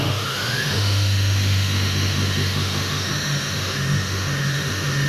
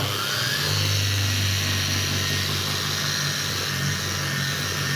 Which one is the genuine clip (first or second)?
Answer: second